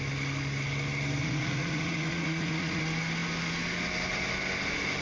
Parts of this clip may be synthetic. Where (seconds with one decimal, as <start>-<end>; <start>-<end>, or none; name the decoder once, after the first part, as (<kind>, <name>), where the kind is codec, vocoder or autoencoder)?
1.2-2.8 (vocoder, Vocos)

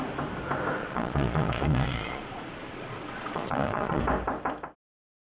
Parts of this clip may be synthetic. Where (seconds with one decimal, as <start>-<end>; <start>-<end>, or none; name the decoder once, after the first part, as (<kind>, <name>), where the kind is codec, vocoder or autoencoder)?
0.8-4.0 (vocoder, Vocos)